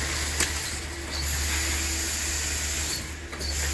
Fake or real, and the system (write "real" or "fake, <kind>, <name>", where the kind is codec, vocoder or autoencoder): real